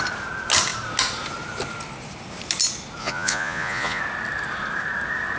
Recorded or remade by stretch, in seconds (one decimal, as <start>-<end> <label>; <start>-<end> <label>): 0.0-3.0 recorded; 3.0-4.0 remade; 4.0-5.4 recorded